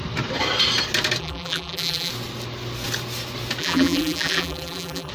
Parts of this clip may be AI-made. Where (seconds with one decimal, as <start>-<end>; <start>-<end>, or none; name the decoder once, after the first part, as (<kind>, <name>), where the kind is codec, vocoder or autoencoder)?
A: 1.2-2.1 (vocoder, BigVGAN v2); 3.6-5.1